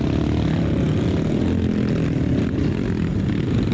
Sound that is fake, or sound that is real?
real